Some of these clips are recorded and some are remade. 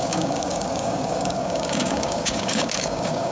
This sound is remade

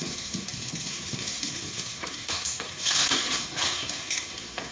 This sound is remade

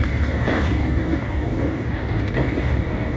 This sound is remade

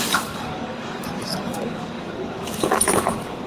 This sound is remade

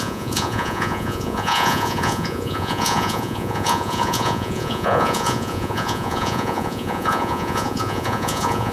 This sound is remade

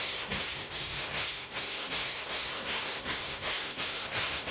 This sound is remade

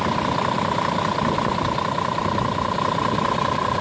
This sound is remade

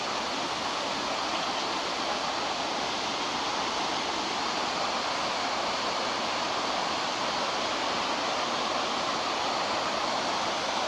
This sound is recorded